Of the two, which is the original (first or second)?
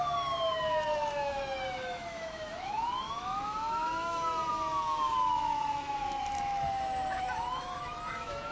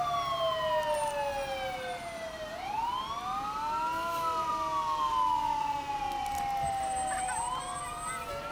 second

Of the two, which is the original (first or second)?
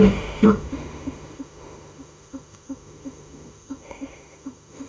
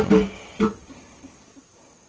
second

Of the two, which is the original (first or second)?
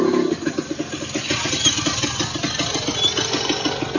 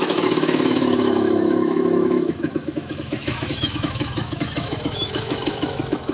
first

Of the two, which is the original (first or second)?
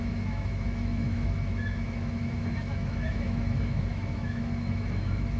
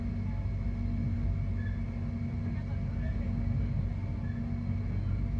second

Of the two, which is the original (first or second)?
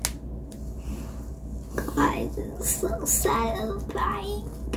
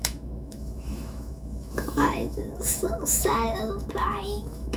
first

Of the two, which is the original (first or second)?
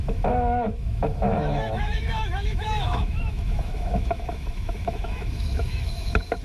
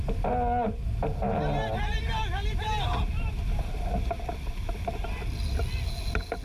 second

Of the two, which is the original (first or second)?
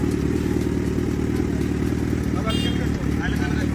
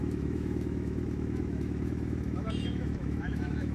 first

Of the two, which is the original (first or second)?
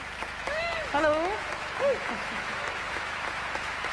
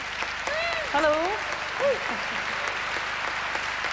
second